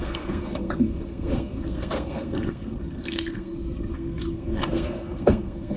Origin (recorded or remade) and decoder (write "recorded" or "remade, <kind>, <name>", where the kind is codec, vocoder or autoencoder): remade, codec, SNAC